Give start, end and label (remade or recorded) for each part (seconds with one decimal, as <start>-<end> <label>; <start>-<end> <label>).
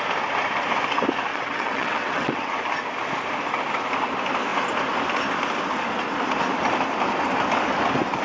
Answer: 0.0-1.3 recorded; 1.3-2.5 remade; 2.5-8.2 recorded